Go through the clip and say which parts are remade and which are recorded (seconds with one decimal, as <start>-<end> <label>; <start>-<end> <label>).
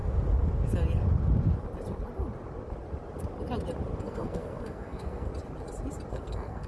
0.0-4.0 recorded; 4.0-5.3 remade; 5.3-6.1 recorded; 6.1-6.7 remade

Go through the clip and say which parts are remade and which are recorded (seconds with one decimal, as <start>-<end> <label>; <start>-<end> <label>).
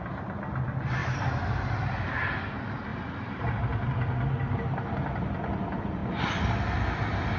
0.0-1.0 recorded; 1.0-1.8 remade; 1.8-2.9 recorded; 2.9-3.6 remade; 3.6-7.4 recorded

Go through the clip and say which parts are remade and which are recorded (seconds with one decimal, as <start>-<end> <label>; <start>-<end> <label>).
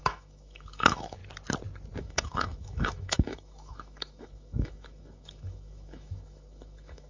0.0-1.2 remade; 1.2-2.0 recorded; 2.0-7.1 remade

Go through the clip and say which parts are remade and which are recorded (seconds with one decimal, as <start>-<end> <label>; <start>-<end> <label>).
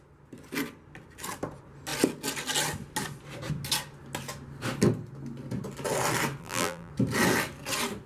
0.0-6.4 recorded; 6.4-6.9 remade; 6.9-8.1 recorded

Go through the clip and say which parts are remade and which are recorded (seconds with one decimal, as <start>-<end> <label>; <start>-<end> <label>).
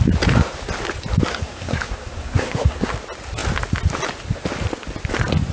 0.0-1.3 recorded; 1.3-2.9 remade; 2.9-5.5 recorded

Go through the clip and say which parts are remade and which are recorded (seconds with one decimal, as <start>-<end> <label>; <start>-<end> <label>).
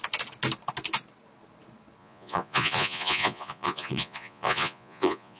0.0-2.0 recorded; 2.0-5.4 remade